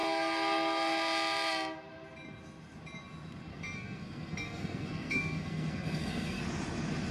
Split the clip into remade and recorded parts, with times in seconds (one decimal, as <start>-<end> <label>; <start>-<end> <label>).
0.0-3.5 recorded; 3.5-6.4 remade; 6.4-7.1 recorded